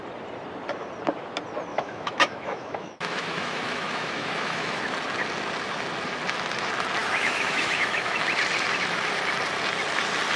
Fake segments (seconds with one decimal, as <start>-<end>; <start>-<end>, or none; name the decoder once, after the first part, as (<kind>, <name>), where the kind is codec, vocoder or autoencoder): 1.7-4.8 (autoencoder, DAC-VAE); 7.0-8.2